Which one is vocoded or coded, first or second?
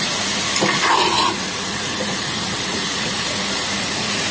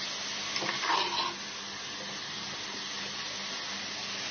first